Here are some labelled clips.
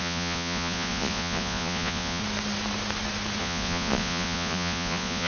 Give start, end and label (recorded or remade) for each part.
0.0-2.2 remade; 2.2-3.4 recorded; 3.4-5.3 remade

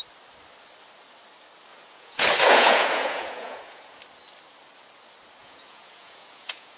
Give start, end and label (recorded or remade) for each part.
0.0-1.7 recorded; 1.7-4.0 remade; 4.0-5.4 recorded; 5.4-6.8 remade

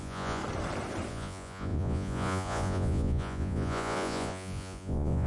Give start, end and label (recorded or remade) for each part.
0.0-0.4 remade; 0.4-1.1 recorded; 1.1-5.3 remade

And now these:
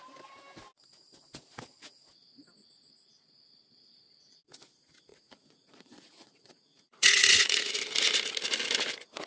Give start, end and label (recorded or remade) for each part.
0.0-5.1 recorded; 5.1-7.7 remade; 7.7-9.3 recorded

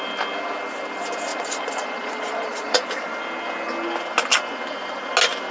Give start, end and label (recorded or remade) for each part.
0.0-1.3 recorded; 1.3-3.1 remade; 3.1-5.5 recorded

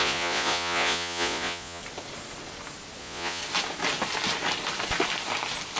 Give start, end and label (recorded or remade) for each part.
0.0-1.8 remade; 1.8-3.0 recorded; 3.0-3.4 remade; 3.4-5.8 recorded